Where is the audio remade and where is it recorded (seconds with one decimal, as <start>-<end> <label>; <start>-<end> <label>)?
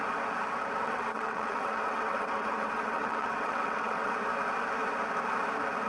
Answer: 0.0-0.8 recorded; 0.8-4.1 remade; 4.1-5.9 recorded